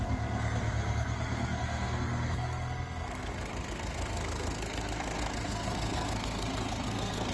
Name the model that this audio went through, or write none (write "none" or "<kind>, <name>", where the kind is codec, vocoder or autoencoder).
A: codec, SNAC